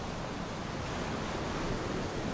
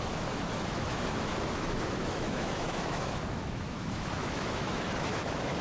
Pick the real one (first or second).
first